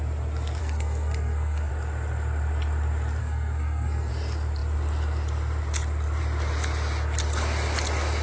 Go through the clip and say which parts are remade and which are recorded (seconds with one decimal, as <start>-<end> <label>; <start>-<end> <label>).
0.0-0.6 recorded; 0.6-1.7 remade; 1.7-3.2 recorded; 3.2-4.1 remade; 4.1-8.2 recorded